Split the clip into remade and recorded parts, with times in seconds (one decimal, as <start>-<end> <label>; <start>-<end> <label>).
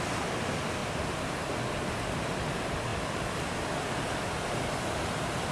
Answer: 0.0-5.5 recorded